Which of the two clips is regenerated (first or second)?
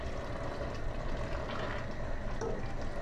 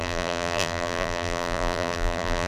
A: second